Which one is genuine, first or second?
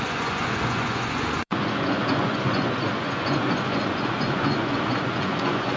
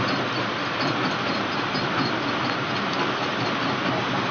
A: second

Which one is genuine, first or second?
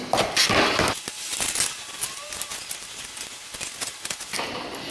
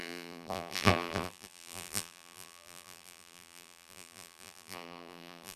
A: first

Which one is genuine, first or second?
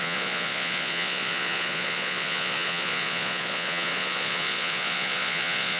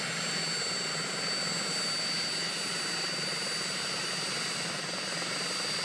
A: second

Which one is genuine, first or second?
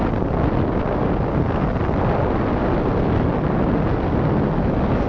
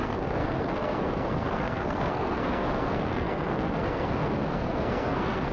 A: first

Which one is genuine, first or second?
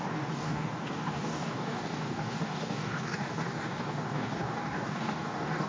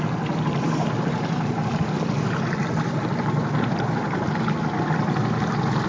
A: second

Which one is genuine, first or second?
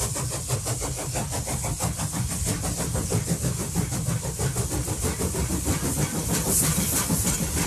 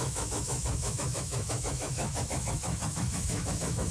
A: first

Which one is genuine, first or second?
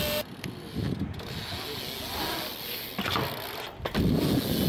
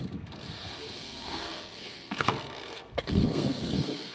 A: first